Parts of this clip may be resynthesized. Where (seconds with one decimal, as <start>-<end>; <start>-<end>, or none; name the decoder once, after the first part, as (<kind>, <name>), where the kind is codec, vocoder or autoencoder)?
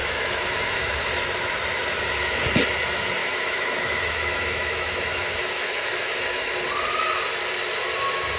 0.0-1.1 (autoencoder, DAC-VAE); 3.2-6.5